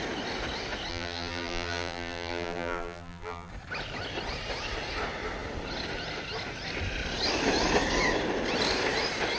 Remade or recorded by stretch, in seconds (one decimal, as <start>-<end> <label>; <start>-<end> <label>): 0.0-0.9 recorded; 0.9-3.5 remade; 3.5-9.4 recorded